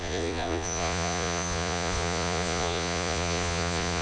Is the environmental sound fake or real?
fake